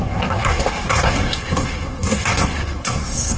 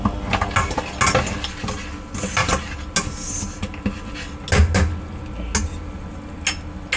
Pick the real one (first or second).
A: second